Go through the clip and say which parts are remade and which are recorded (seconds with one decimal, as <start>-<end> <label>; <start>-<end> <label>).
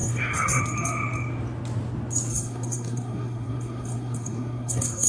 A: 0.0-0.6 remade; 0.6-2.3 recorded; 2.3-5.1 remade